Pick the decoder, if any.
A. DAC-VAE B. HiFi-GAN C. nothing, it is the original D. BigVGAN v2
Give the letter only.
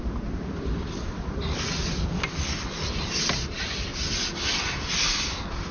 C